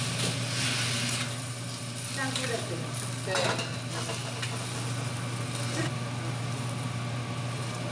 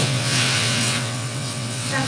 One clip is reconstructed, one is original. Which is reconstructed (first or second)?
second